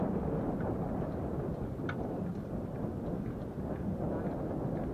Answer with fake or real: real